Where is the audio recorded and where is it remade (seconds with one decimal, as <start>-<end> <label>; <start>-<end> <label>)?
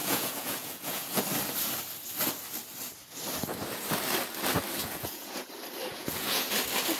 0.0-1.2 remade; 1.2-4.8 recorded; 4.8-5.5 remade; 5.5-5.9 recorded; 5.9-6.5 remade; 6.5-7.0 recorded